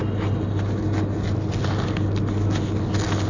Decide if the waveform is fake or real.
real